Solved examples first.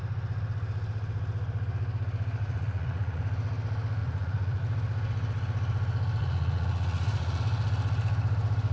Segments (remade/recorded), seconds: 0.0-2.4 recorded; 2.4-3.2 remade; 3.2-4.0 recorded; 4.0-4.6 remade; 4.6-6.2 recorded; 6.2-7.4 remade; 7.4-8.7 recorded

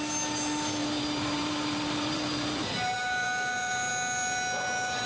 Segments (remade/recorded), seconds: 0.0-0.8 recorded; 0.8-3.9 remade; 3.9-5.1 recorded

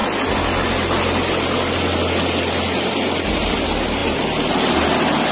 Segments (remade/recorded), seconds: 0.0-5.3 recorded

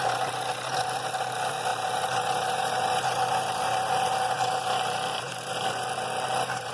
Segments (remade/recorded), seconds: 0.0-1.7 recorded; 1.7-5.7 remade; 5.7-6.7 recorded

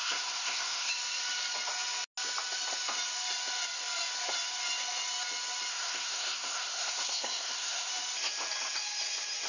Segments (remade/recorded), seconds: 0.0-0.9 remade; 0.9-5.7 recorded; 5.7-7.9 remade; 7.9-9.5 recorded

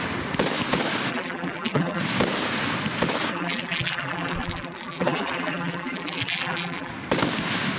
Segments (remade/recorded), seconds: 0.0-1.1 recorded; 1.1-2.0 remade; 2.0-3.3 recorded; 3.3-6.9 remade; 6.9-7.8 recorded

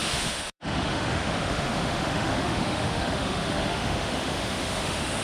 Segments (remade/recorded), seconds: 0.0-5.2 remade

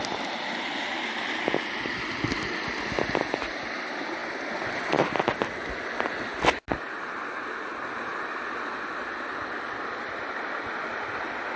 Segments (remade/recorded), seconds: 0.0-11.6 recorded